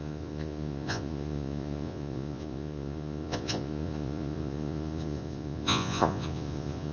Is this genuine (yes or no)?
no